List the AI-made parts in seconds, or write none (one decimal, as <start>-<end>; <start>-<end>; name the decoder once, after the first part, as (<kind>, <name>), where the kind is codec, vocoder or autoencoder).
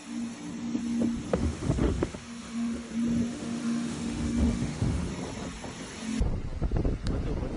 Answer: 1.3-2.9 (autoencoder, DAC-VAE); 3.3-5.1